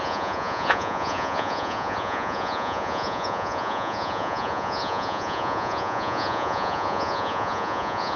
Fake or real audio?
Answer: fake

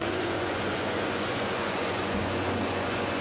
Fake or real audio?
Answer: fake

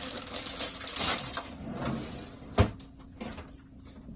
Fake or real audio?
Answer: real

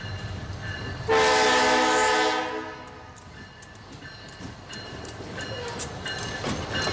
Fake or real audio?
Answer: real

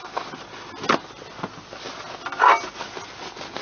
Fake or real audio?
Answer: real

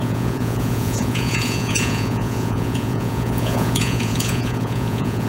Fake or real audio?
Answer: fake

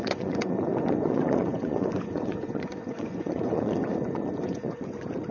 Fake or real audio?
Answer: fake